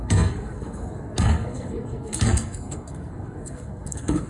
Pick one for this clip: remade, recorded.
remade